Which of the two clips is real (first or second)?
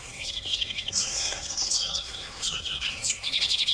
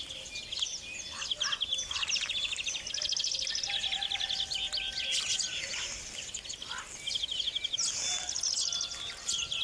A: second